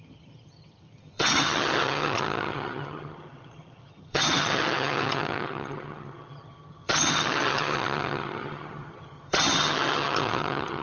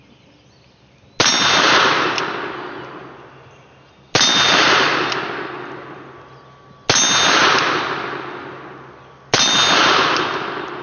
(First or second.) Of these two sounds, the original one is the second